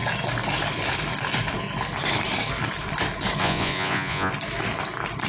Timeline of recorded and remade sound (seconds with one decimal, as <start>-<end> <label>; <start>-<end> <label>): 0.0-3.4 recorded; 3.4-4.3 remade; 4.3-5.3 recorded